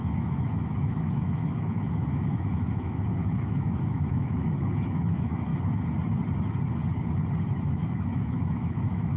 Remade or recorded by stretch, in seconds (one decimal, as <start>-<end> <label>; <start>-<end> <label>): 0.0-5.5 remade; 5.5-7.6 recorded; 7.6-9.2 remade